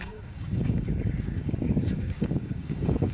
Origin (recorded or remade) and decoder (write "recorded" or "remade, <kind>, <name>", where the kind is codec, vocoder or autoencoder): remade, codec, DAC